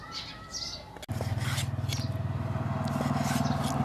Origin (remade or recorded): recorded